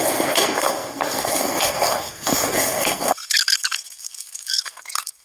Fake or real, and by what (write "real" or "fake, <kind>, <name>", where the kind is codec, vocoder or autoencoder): fake, codec, SNAC